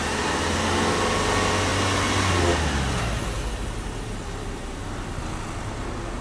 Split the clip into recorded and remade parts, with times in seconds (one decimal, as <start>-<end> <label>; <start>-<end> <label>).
0.0-6.2 recorded